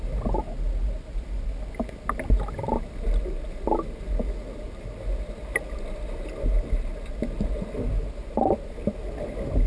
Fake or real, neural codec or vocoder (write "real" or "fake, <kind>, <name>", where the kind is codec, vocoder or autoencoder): real